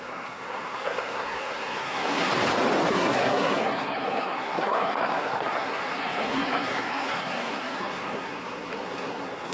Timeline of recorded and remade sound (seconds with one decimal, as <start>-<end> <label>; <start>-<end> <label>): 0.0-2.3 remade; 2.3-2.9 recorded; 2.9-9.5 remade